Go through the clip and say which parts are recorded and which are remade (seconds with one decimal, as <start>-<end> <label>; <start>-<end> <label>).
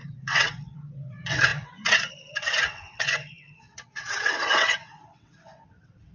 0.0-6.1 remade